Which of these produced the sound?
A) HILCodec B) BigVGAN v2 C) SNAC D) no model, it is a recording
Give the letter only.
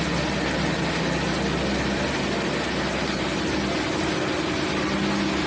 D